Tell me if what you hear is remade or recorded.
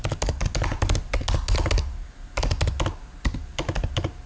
recorded